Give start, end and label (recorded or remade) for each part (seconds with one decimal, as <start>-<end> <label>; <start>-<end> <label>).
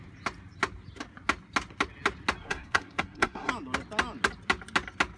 0.0-2.4 recorded; 2.4-3.5 remade; 3.5-5.2 recorded